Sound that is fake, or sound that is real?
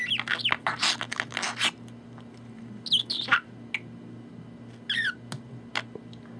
real